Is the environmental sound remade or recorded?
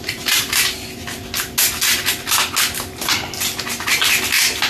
recorded